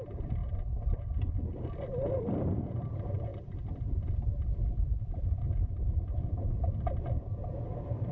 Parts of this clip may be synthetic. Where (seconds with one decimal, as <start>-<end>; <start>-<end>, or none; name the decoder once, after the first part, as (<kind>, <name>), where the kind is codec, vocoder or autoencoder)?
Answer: none

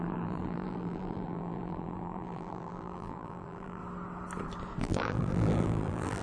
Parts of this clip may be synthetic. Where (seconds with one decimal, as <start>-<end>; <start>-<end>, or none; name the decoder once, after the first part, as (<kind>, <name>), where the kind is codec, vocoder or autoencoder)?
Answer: 0.0-3.8 (vocoder, BigVGAN v2); 4.8-6.2

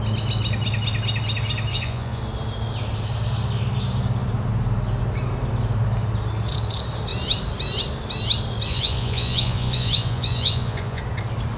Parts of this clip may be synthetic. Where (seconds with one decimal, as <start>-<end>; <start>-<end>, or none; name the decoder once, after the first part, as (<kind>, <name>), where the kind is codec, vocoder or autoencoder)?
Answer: 1.7-2.2 (vocoder, Vocos); 8.7-11.0

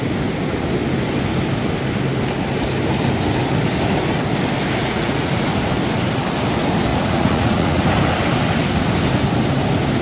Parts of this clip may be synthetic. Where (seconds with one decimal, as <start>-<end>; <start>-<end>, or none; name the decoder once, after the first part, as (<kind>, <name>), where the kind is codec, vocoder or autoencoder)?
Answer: 4.8-5.3 (vocoder, Vocos); 6.9-7.8

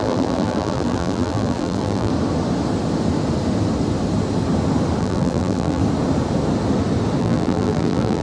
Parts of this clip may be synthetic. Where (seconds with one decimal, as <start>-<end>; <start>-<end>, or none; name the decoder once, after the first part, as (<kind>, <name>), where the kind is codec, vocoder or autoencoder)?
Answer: 0.0-2.1 (vocoder, BigVGAN v2); 5.0-5.8; 7.2-8.2

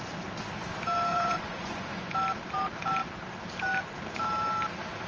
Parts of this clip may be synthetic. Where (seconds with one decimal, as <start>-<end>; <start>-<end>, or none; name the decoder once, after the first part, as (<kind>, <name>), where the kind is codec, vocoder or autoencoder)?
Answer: 1.1-2.1 (vocoder, Vocos)